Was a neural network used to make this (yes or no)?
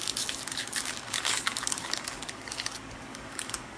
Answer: yes